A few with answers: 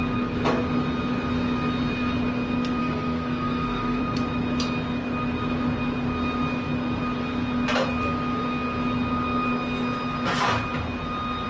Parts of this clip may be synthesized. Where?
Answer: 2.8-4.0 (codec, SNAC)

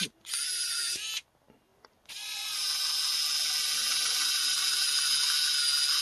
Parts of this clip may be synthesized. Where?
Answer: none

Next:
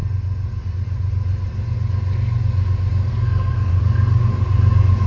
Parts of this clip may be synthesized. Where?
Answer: 3.1-3.7 (codec, SNAC)

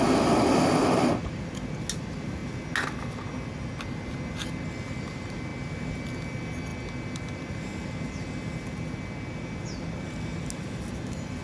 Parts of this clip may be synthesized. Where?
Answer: none